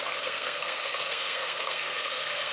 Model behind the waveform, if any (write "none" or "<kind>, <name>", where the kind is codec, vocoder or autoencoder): codec, SNAC